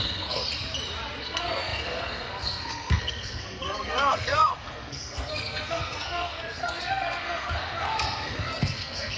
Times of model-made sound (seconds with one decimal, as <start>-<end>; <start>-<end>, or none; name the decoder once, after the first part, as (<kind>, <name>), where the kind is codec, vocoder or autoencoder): 0.0-0.4 (codec, SNAC); 1.2-9.2